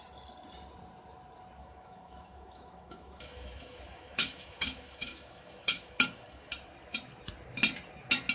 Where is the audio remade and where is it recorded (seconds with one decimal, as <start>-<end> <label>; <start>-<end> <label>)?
0.0-1.6 recorded; 1.6-6.5 remade; 6.5-8.3 recorded